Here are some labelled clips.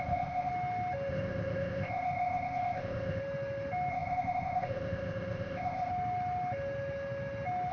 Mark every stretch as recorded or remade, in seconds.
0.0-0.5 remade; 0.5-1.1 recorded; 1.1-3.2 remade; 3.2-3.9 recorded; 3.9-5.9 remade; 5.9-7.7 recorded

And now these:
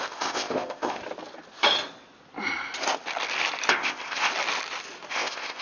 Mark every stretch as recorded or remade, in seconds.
0.0-1.0 remade; 1.0-3.7 recorded; 3.7-4.3 remade; 4.3-5.1 recorded; 5.1-5.6 remade

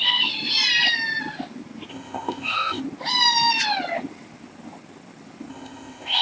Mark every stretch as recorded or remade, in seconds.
0.0-1.9 recorded; 1.9-2.8 remade; 2.8-5.5 recorded; 5.5-6.2 remade

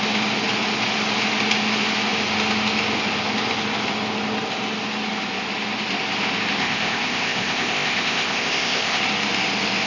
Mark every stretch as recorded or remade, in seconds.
0.0-6.6 recorded; 6.6-9.0 remade; 9.0-9.9 recorded

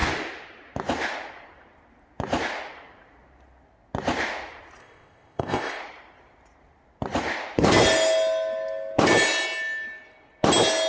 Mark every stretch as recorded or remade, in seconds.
0.0-4.8 recorded; 4.8-5.8 remade; 5.8-10.9 recorded

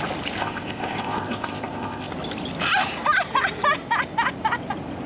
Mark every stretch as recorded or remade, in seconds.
0.0-0.4 recorded; 0.4-2.1 remade; 2.1-5.1 recorded